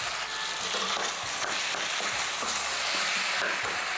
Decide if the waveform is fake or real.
real